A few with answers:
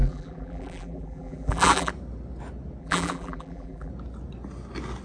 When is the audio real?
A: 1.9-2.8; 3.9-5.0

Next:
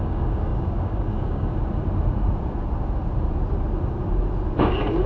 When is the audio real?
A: 1.5-4.6

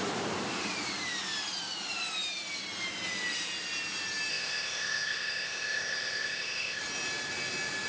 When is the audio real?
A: 0.0-4.3; 6.8-7.9